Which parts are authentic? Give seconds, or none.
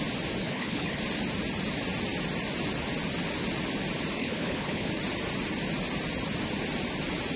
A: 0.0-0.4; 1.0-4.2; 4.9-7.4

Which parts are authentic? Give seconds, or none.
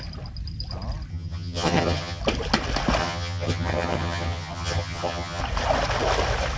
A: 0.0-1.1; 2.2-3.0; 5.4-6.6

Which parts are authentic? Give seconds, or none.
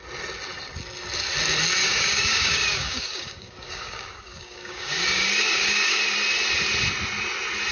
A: 0.0-1.8; 6.0-7.7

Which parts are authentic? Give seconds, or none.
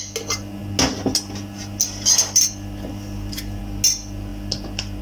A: 0.0-5.0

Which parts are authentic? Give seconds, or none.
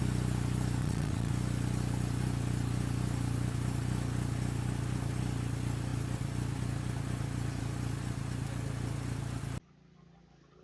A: 0.0-0.8; 1.3-10.6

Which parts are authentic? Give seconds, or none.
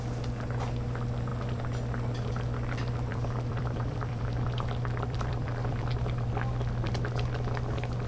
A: 0.0-3.1; 6.3-8.1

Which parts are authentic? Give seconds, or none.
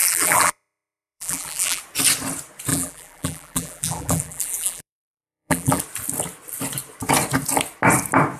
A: 1.8-2.7; 5.8-8.4